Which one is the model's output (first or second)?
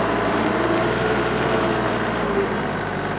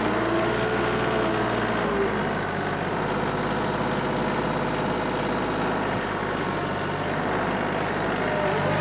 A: first